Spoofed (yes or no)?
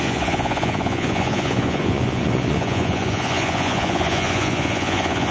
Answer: yes